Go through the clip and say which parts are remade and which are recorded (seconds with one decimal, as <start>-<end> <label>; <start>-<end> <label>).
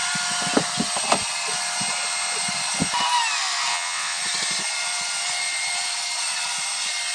0.0-3.7 recorded; 3.7-4.2 remade; 4.2-7.1 recorded